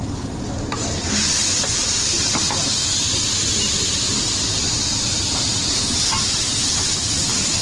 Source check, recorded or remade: remade